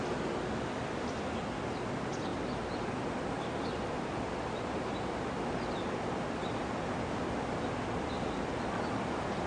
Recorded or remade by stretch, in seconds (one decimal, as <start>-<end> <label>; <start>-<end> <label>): 0.0-9.5 recorded